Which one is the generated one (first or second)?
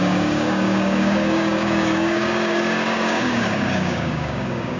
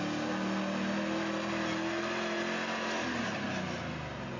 first